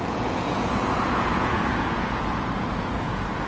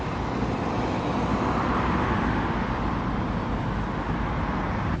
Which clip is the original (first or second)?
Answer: second